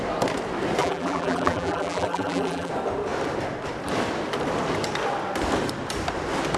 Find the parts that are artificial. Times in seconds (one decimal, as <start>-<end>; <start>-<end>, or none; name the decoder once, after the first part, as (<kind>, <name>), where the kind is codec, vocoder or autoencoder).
0.8-2.7 (vocoder, BigVGAN v2)